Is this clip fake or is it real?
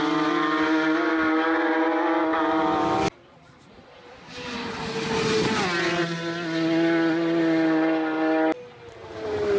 real